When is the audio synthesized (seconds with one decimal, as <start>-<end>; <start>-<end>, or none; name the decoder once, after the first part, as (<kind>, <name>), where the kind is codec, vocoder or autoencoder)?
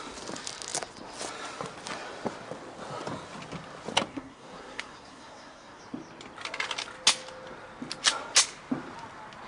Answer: 4.1-5.8 (codec, SNAC)